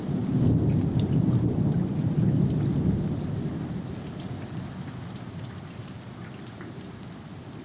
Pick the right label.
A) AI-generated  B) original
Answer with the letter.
B